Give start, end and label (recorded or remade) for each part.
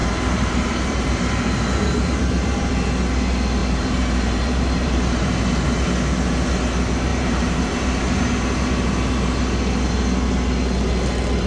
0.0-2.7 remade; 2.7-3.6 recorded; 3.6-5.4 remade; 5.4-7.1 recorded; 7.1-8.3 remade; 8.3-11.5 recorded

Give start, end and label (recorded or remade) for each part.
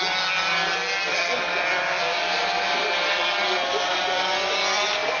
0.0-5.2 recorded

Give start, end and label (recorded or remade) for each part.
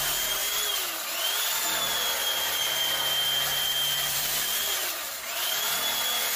0.0-2.2 recorded; 2.2-5.7 remade; 5.7-6.4 recorded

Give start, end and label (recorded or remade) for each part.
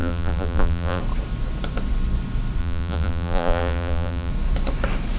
0.0-1.0 remade; 1.0-2.6 recorded; 2.6-4.3 remade; 4.3-5.2 recorded